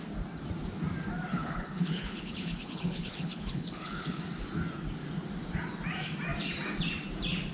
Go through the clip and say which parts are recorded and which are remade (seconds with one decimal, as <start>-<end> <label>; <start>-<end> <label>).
0.0-1.3 recorded; 1.3-4.2 remade; 4.2-7.5 recorded